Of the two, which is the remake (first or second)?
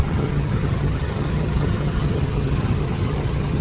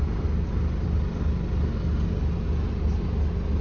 first